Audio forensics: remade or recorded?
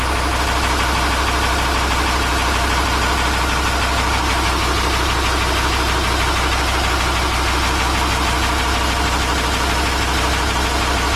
recorded